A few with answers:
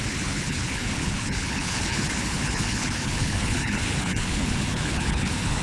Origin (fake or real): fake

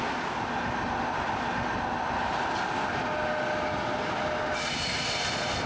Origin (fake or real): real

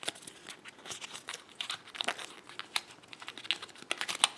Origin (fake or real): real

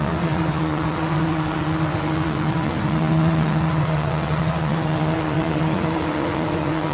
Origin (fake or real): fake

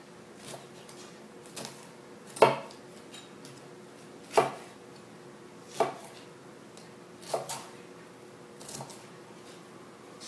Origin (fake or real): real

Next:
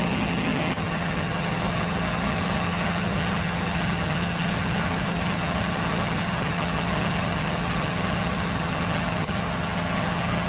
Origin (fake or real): fake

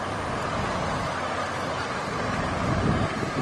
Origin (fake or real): real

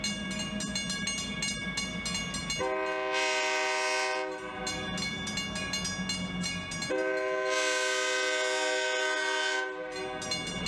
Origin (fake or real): real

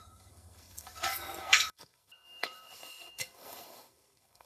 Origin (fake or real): fake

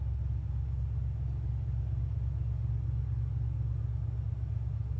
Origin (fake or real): real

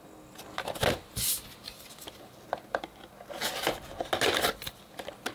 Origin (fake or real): real